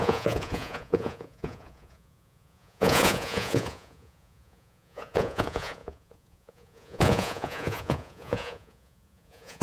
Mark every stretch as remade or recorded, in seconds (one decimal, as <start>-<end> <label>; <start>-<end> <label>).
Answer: 0.0-9.6 remade